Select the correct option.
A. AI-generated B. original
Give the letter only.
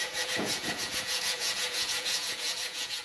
A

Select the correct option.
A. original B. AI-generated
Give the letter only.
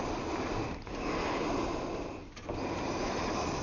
A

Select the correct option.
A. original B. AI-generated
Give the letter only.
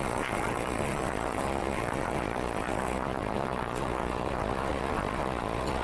B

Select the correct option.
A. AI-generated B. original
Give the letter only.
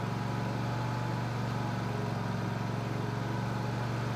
B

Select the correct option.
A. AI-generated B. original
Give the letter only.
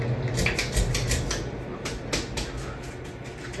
B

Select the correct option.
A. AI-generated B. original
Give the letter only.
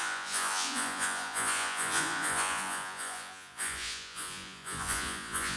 A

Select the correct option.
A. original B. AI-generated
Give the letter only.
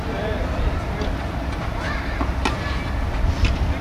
A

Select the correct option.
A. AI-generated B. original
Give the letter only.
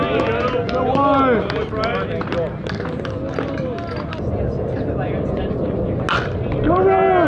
B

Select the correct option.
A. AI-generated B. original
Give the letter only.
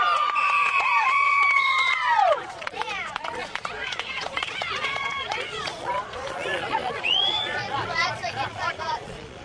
A